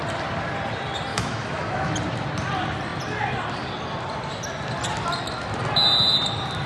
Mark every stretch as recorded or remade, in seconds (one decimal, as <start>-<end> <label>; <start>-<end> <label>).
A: 0.0-1.1 recorded; 1.1-1.9 remade; 1.9-6.7 recorded